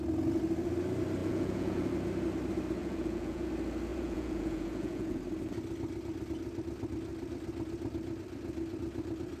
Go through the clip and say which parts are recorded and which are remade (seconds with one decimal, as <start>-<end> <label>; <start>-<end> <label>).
0.0-1.2 recorded; 1.2-1.9 remade; 1.9-2.8 recorded; 2.8-3.5 remade; 3.5-3.9 recorded; 3.9-5.2 remade; 5.2-9.4 recorded